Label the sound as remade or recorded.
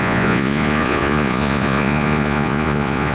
remade